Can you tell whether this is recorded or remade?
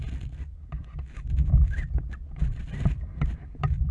recorded